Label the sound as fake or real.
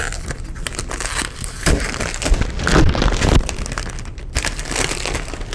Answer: real